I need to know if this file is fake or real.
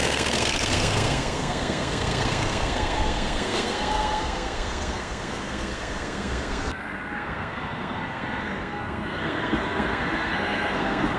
fake